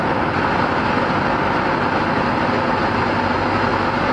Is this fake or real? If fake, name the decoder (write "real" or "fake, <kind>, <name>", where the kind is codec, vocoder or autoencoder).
real